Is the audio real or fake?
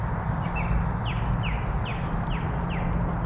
real